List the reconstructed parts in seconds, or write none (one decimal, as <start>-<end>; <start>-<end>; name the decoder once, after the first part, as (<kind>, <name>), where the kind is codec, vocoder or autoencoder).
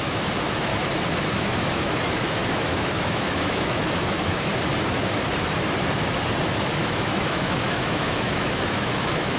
0.0-0.7 (autoencoder, DAC-VAE); 1.3-4.5; 6.8-9.4